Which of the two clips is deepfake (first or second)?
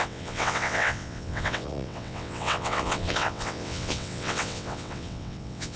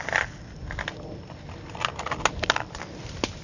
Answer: first